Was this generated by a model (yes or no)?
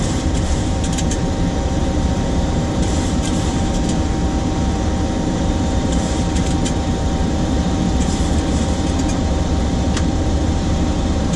yes